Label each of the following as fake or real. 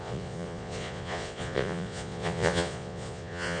fake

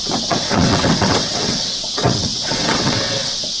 fake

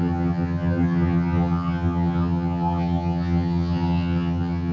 fake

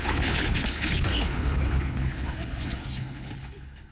fake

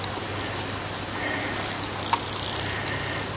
real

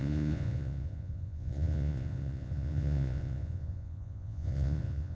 fake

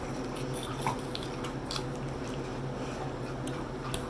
real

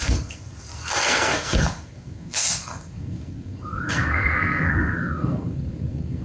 fake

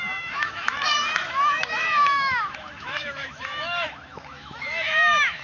fake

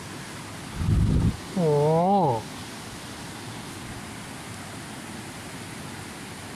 real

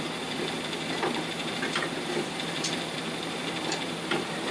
fake